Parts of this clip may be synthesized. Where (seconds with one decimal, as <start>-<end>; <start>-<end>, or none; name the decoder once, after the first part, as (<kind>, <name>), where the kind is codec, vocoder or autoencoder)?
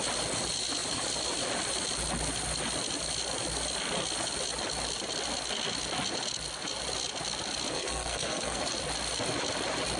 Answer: 7.7-8.6 (codec, SNAC)